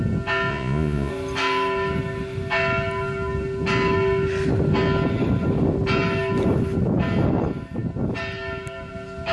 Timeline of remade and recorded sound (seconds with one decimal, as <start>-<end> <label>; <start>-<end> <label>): 0.0-0.5 recorded; 0.5-1.1 remade; 1.1-9.3 recorded

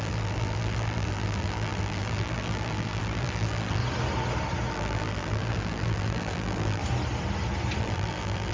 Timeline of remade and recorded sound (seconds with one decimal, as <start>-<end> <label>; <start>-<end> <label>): 0.0-3.8 remade; 3.8-4.7 recorded; 4.7-6.8 remade; 6.8-7.8 recorded; 7.8-8.5 remade

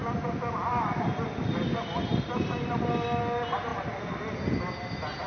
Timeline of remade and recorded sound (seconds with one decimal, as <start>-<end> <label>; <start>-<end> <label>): 0.0-5.3 recorded